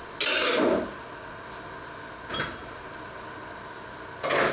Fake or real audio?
real